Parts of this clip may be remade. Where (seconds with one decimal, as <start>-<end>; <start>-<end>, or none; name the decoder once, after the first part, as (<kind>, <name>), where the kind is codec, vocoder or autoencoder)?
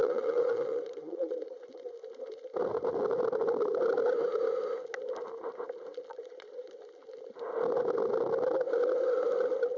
0.0-1.9 (vocoder, Vocos); 6.1-6.7